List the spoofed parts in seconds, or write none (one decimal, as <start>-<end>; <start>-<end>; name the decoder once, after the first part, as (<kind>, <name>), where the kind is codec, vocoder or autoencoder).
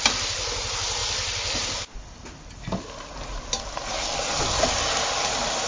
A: none